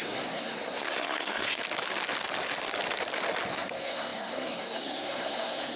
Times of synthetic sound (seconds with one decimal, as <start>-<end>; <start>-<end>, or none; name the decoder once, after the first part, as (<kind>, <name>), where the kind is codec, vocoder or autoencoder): 0.0-1.6 (codec, SNAC); 3.5-5.8